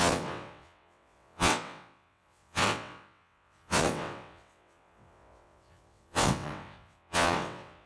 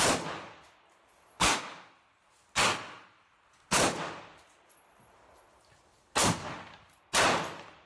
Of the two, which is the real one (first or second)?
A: second